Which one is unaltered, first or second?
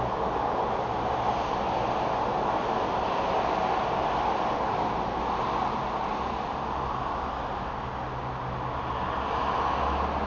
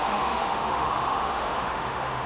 first